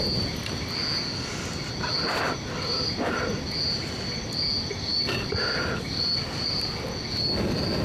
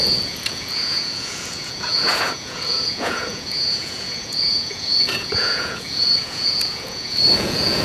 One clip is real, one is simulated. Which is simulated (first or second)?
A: second